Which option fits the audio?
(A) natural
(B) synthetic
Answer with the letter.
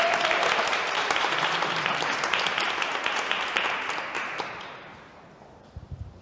B